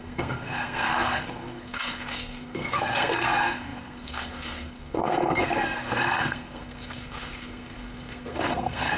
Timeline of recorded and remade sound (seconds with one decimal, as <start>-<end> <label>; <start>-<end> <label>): 0.0-9.0 remade